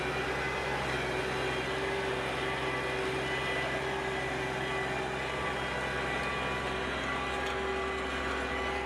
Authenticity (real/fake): real